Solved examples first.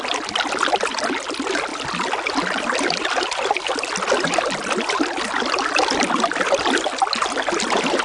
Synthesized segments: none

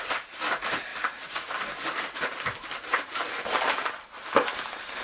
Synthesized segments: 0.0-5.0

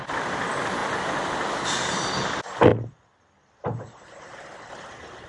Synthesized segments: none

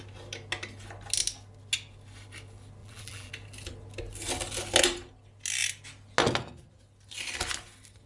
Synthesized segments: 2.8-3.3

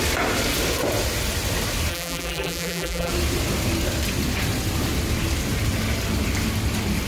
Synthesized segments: 1.9-3.1